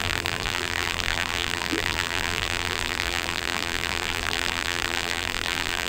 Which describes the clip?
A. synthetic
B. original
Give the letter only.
A